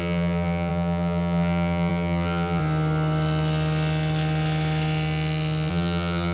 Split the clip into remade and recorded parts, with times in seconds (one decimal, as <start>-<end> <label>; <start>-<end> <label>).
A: 0.0-2.6 remade; 2.6-5.7 recorded; 5.7-6.3 remade